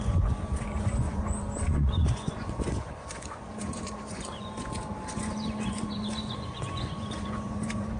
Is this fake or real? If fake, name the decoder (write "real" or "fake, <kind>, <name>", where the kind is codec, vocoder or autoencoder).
fake, vocoder, Vocos